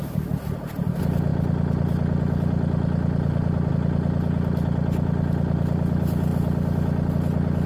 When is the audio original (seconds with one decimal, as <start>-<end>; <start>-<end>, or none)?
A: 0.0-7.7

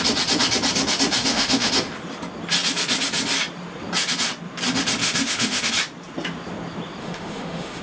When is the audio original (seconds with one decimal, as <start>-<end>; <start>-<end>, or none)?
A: 0.0-1.2; 1.7-5.0; 5.7-7.0

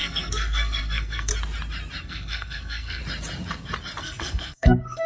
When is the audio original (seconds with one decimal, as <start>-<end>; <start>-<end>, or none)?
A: 1.3-2.0; 3.0-4.0

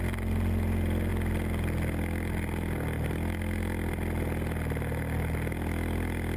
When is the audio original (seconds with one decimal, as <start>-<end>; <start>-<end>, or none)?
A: 0.0-6.4